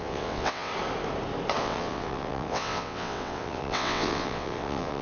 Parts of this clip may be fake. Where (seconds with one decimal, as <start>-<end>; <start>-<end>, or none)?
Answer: 0.0-0.7; 1.6-5.0